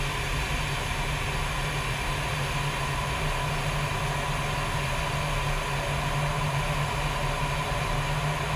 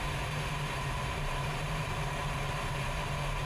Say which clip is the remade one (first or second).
second